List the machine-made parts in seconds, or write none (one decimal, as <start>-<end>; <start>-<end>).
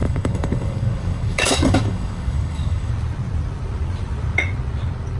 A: 0.0-2.9